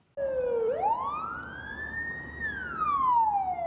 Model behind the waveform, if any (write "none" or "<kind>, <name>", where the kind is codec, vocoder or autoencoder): none